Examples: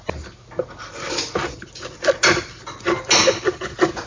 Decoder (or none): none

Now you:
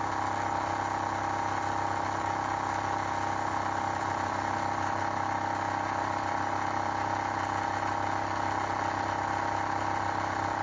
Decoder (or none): none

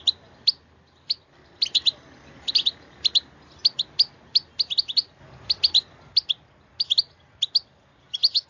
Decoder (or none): none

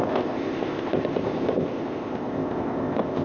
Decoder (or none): codec, ZipCodec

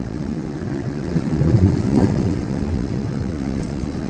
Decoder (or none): vocoder, WaveNeXt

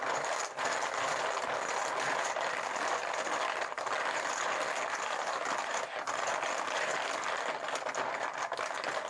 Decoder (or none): none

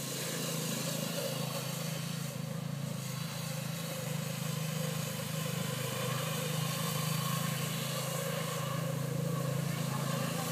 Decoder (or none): none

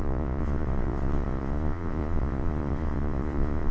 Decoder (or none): vocoder, Vocos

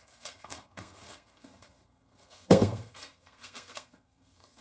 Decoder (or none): codec, SNAC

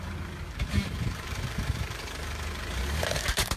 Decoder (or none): codec, DAC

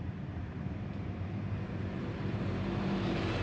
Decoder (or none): vocoder, BigVGAN v2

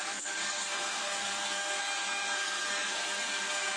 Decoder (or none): codec, SNAC